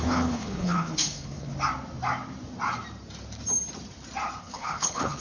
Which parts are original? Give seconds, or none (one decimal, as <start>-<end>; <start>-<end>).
1.5-4.4